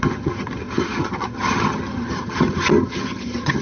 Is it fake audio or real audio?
fake